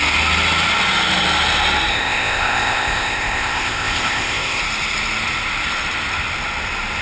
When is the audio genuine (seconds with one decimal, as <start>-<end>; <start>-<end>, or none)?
0.0-1.9; 4.6-7.0